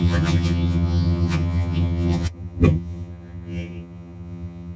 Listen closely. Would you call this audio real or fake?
fake